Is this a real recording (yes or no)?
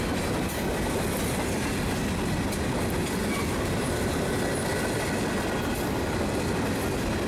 yes